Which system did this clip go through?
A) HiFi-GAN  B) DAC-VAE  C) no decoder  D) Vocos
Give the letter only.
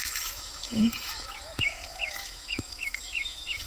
B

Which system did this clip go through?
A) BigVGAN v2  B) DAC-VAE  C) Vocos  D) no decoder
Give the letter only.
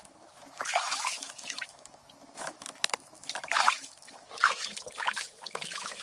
B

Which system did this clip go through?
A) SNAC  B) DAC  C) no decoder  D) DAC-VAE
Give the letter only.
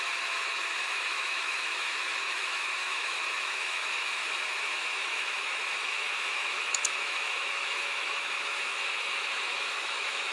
D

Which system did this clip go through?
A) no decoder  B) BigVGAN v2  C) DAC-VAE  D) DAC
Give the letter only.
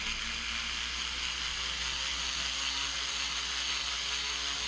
A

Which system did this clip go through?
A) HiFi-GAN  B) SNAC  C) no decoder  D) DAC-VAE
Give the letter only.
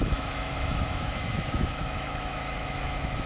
D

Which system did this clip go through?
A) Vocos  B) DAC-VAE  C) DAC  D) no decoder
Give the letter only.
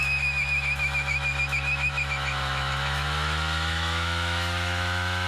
B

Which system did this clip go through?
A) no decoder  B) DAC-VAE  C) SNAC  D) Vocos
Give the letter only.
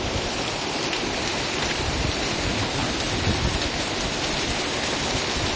A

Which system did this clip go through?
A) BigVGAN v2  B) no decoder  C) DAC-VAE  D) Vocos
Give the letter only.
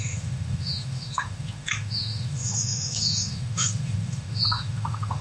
C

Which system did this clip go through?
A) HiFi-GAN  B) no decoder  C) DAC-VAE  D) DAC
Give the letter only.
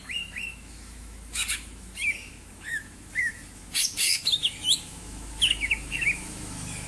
C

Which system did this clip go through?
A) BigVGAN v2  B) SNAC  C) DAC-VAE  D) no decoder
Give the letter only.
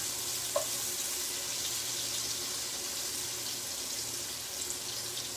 D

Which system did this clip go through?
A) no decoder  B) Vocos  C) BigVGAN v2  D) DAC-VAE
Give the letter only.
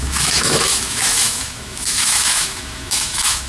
D